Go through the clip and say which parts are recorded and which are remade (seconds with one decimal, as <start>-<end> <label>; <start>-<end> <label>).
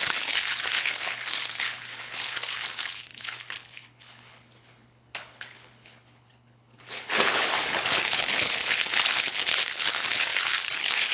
0.0-11.1 remade